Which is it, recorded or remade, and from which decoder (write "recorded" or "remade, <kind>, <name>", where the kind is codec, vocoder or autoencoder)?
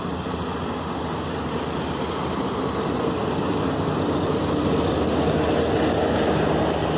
recorded